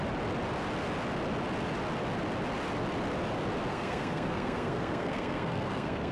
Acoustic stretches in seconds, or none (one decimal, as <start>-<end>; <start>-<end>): 0.0-3.7